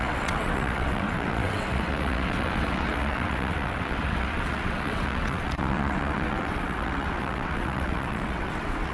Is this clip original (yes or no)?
no